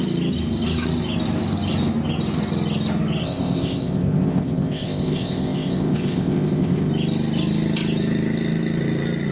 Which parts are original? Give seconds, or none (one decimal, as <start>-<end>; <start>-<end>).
0.0-3.2; 6.9-9.3